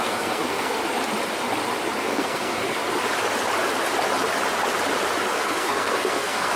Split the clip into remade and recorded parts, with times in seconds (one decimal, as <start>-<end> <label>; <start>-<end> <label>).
0.0-0.8 remade; 0.8-2.0 recorded; 2.0-2.8 remade; 2.8-5.3 recorded; 5.3-6.6 remade